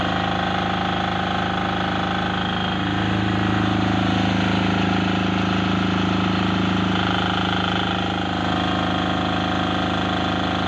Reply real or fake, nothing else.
real